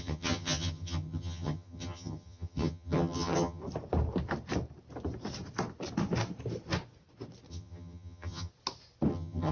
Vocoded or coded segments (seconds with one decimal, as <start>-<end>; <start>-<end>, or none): 0.0-3.6; 7.5-8.5; 9.1-9.5